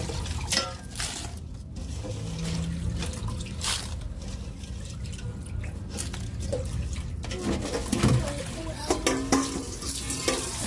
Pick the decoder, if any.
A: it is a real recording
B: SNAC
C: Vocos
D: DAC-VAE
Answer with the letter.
A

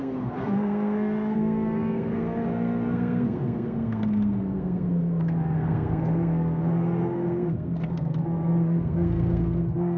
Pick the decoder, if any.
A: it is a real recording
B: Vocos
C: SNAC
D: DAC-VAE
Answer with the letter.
C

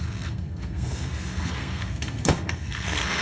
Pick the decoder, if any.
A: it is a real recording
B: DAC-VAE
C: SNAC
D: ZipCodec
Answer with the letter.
C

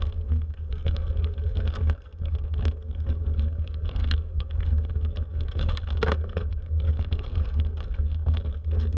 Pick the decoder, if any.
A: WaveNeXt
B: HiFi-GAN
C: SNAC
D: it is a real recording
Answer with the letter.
C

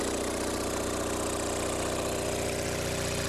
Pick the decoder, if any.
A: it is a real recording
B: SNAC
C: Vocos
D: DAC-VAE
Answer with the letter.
A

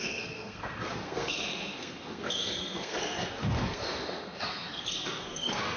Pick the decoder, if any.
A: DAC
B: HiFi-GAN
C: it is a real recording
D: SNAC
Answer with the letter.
D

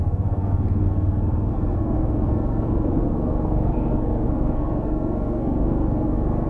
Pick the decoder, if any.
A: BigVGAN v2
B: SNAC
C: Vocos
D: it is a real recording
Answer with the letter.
B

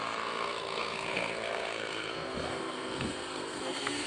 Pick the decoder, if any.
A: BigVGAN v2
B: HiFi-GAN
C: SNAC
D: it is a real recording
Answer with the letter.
C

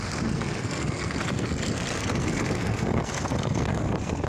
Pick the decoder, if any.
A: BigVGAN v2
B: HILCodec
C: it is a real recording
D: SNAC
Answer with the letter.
D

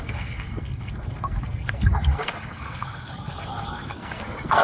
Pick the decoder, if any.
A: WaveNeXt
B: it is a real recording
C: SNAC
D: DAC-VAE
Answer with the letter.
C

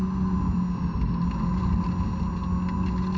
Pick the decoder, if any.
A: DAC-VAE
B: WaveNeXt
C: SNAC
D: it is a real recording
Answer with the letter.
D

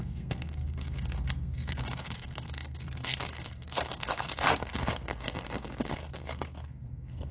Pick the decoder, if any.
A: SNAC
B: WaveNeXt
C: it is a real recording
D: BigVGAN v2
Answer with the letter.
A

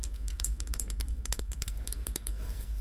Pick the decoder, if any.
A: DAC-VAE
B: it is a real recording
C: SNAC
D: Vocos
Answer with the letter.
C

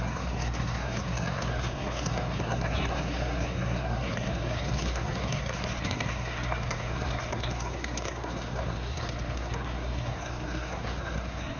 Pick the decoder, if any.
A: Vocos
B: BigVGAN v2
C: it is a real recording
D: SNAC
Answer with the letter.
D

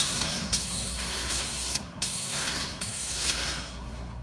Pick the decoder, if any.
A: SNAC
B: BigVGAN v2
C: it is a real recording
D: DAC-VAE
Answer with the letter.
A